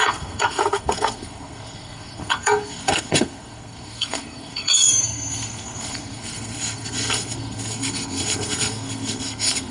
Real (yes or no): no